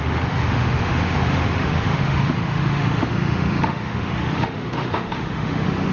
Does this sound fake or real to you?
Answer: fake